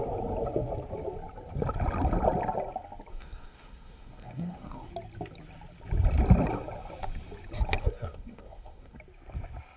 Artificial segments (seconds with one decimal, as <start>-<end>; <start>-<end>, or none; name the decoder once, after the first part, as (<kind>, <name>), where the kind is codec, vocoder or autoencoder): 3.1-4.9 (codec, SNAC); 7.8-9.0